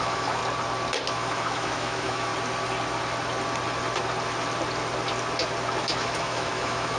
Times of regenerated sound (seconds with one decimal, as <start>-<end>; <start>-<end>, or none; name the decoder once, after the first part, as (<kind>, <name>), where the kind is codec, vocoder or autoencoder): 0.0-0.4 (autoencoder, DAC-VAE); 1.1-2.3; 5.8-7.0